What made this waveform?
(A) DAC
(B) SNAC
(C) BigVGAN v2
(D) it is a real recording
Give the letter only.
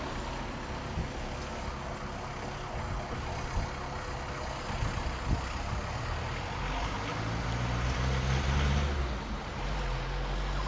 D